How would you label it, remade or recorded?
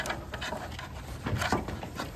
remade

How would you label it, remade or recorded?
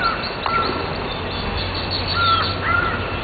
recorded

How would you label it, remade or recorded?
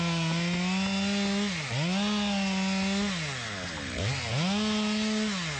recorded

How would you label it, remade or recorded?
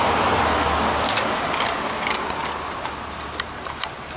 recorded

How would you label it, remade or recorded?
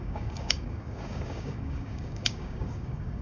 remade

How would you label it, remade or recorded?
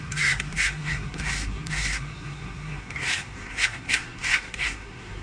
remade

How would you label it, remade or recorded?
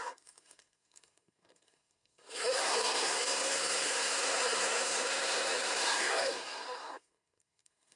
remade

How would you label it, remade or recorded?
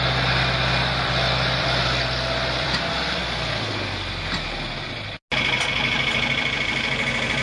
recorded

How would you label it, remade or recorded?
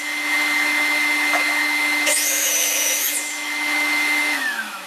remade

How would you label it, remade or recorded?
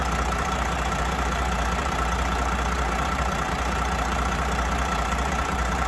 remade